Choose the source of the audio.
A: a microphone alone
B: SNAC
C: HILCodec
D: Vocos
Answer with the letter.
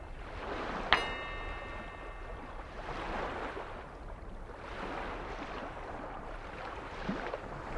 A